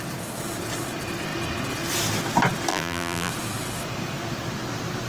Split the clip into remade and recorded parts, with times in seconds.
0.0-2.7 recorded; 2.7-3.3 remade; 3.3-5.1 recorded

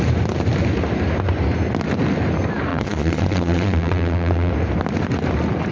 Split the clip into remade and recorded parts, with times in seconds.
0.0-2.7 recorded; 2.7-4.5 remade; 4.5-5.7 recorded

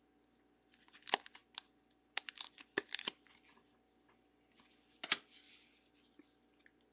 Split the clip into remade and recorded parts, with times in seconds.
0.0-6.9 recorded

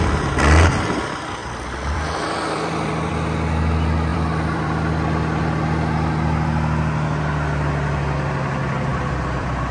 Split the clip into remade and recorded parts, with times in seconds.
0.0-1.4 recorded; 1.4-3.1 remade; 3.1-4.1 recorded; 4.1-5.4 remade; 5.4-8.9 recorded; 8.9-9.7 remade